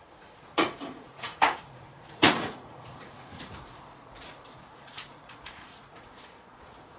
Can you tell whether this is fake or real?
fake